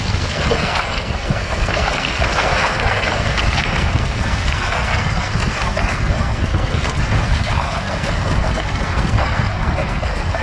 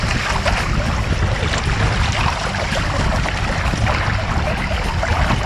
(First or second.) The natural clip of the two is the second